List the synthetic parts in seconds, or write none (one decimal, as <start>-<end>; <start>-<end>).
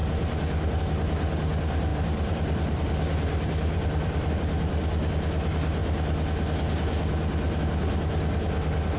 0.0-0.8; 1.9-4.3